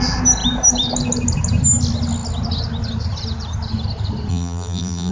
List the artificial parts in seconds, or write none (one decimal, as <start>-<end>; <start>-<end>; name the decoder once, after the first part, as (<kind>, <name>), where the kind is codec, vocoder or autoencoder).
4.3-5.1 (vocoder, BigVGAN v2)